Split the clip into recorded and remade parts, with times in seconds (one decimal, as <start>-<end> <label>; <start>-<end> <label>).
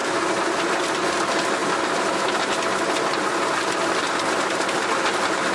0.0-5.5 recorded